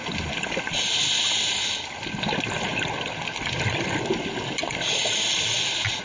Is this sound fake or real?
real